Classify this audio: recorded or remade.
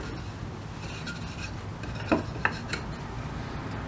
recorded